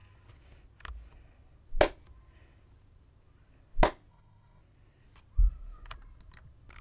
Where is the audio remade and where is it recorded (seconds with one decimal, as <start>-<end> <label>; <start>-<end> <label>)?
0.0-4.1 recorded; 4.1-4.6 remade; 4.6-6.8 recorded

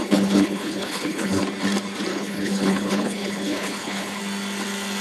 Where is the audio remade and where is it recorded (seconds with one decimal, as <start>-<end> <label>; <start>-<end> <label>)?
0.0-1.4 remade; 1.4-2.1 recorded; 2.1-4.2 remade; 4.2-5.0 recorded

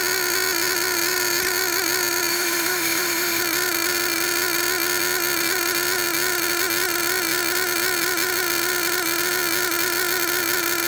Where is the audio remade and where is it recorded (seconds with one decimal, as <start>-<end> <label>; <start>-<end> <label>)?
0.0-2.3 recorded; 2.3-3.4 remade; 3.4-10.9 recorded

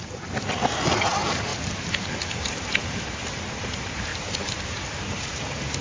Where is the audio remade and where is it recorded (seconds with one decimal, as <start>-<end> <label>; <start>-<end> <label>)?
0.0-1.5 recorded; 1.5-3.0 remade; 3.0-4.1 recorded; 4.1-5.8 remade

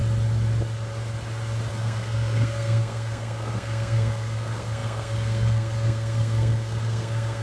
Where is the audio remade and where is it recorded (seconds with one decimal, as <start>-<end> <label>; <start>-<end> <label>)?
0.0-1.7 recorded; 1.7-7.4 remade

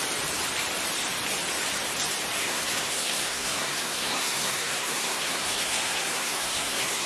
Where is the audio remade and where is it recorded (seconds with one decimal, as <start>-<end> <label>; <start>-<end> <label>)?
0.0-2.4 recorded; 2.4-7.1 remade

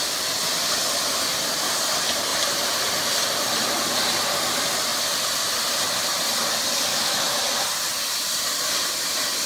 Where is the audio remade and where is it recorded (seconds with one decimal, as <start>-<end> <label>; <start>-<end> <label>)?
0.0-6.9 recorded; 6.9-7.4 remade; 7.4-9.5 recorded

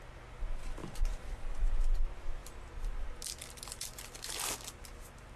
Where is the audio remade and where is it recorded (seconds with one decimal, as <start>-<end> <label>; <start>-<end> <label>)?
0.0-0.8 recorded; 0.8-1.8 remade; 1.8-5.4 recorded